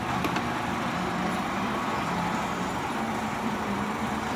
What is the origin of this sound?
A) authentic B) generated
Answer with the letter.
B